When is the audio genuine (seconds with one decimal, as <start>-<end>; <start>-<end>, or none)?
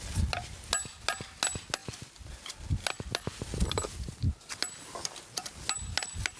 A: 0.0-6.4